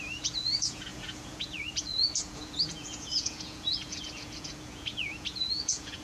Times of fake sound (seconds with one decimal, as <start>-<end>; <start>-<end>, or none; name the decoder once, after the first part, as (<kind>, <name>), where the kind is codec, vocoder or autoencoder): 0.0-6.0 (vocoder, Vocos)